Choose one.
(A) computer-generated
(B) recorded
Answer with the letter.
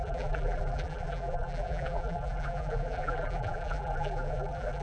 A